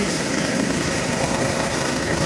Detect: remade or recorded remade